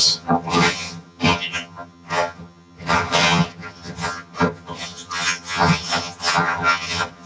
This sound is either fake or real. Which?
fake